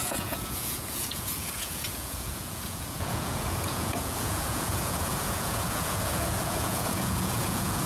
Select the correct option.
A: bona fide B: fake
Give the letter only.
B